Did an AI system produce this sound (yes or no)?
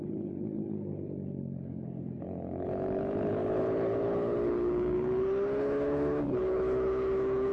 yes